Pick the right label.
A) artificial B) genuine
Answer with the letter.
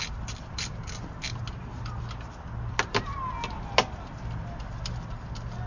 B